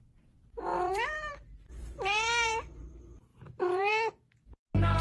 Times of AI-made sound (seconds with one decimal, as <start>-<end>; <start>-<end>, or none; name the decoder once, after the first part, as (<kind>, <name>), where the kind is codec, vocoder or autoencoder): 0.7-2.9 (vocoder, BigVGAN v2); 3.3-3.9

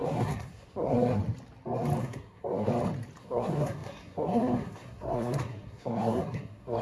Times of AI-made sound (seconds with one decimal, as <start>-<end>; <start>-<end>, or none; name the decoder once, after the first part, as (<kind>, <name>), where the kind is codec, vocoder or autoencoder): 0.0-1.2 (codec, SNAC); 2.0-2.7; 3.2-6.8

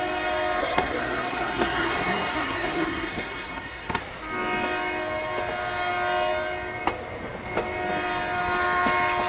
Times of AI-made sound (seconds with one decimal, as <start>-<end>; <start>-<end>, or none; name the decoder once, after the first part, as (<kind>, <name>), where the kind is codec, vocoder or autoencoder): 0.6-4.0 (codec, SNAC)

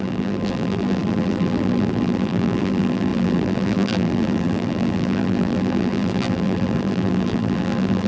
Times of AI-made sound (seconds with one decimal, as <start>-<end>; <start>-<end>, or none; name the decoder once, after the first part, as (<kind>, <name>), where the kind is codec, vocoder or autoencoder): 0.0-8.1 (vocoder, BigVGAN v2)

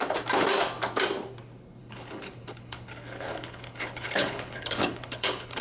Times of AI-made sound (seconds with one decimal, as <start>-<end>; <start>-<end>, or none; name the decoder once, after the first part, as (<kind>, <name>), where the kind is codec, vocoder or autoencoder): 1.8-5.6 (codec, HILCodec)

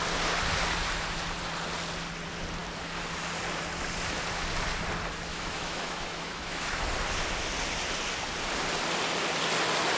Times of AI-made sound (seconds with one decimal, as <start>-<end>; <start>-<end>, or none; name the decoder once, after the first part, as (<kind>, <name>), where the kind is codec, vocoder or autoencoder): 5.3-6.9 (autoencoder, DAC-VAE)